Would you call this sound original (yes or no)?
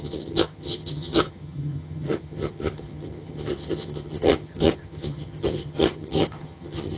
no